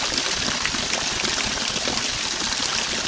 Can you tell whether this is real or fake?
real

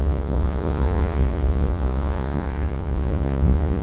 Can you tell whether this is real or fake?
fake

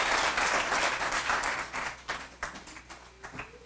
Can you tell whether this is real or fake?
real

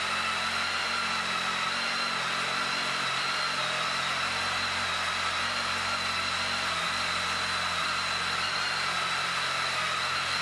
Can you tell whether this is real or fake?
real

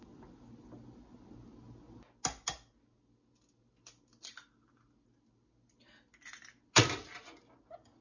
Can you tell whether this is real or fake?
real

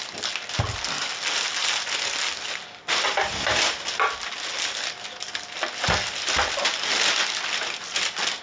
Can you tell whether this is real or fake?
real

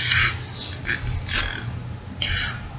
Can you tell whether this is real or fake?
real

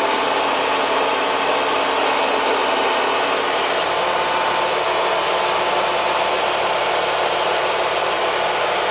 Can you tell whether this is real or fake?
real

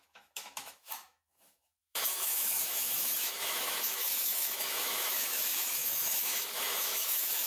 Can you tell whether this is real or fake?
fake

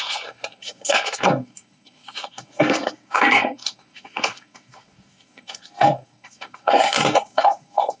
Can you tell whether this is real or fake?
fake